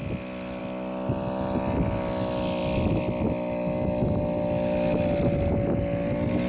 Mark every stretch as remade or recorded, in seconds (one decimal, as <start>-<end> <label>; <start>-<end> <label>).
0.0-6.5 recorded